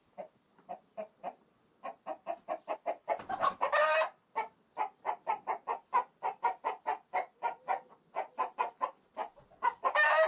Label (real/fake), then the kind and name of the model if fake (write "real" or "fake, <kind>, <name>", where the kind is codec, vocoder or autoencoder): real